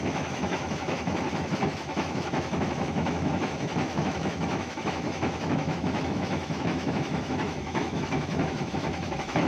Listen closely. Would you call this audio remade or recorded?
remade